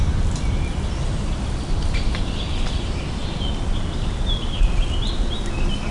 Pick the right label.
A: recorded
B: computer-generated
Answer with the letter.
A